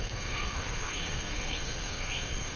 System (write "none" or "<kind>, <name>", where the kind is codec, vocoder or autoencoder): codec, SNAC